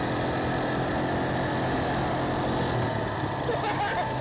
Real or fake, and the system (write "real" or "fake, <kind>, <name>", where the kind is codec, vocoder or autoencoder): real